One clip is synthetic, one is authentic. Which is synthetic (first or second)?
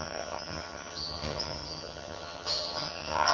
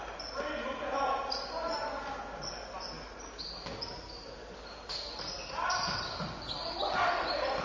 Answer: first